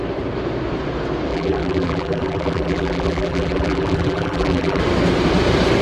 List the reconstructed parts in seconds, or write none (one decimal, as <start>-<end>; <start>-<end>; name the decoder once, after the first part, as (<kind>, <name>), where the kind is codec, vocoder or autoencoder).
1.3-4.8 (vocoder, BigVGAN v2)